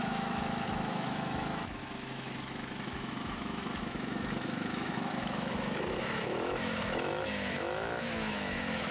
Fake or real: fake